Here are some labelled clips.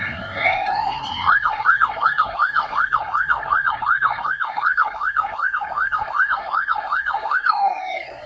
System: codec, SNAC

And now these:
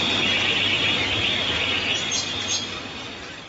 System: none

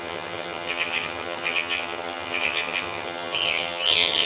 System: vocoder, HiFi-GAN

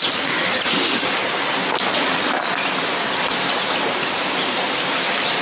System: none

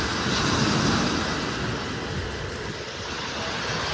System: none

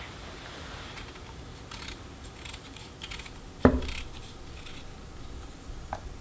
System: none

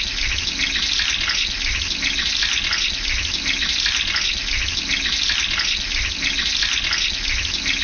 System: none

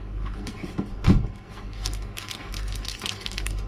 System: codec, SNAC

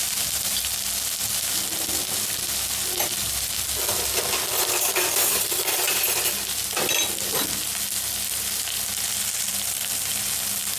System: none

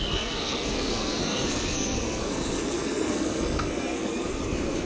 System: codec, SNAC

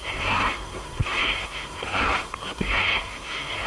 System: codec, SNAC